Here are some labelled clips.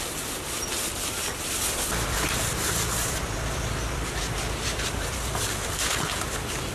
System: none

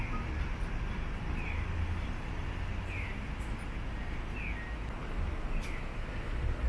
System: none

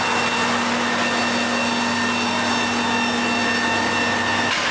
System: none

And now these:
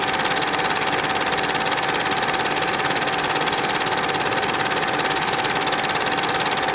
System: none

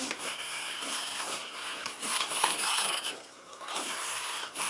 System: codec, SNAC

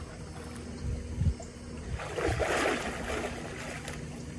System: none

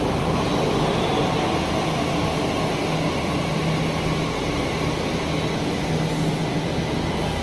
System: none